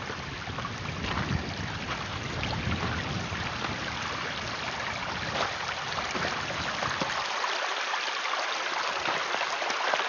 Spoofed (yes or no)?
no